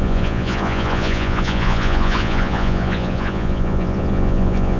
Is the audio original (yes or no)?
no